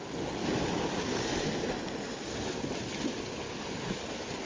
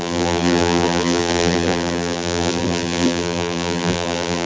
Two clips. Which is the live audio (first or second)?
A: first